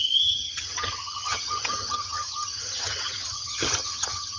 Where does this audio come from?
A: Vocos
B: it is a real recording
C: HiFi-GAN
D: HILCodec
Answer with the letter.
C